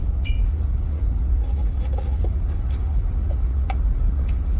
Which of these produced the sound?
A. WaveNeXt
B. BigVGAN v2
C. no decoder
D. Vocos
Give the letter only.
D